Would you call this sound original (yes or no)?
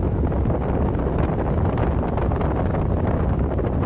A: yes